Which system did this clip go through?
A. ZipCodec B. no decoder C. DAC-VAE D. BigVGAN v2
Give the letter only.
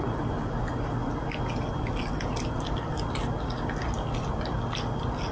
B